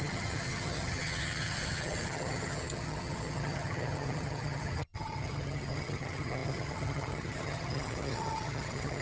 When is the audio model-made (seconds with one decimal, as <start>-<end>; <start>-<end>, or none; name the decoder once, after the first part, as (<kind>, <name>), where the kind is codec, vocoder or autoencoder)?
0.0-9.0 (vocoder, HiFi-GAN)